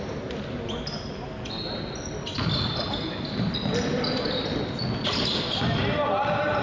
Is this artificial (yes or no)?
no